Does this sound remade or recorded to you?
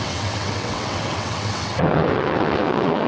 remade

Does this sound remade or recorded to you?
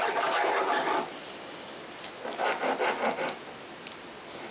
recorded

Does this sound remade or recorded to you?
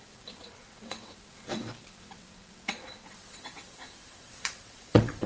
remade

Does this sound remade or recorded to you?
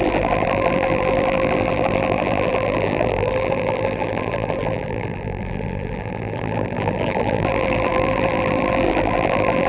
remade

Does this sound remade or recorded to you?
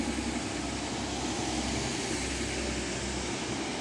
recorded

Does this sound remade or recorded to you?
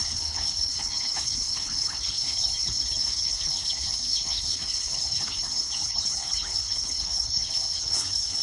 remade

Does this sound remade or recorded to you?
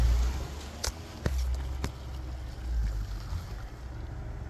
recorded